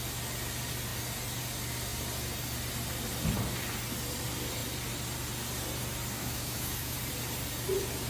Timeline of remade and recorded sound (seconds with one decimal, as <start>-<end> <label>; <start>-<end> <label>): 0.0-6.2 recorded; 6.2-7.0 remade; 7.0-8.1 recorded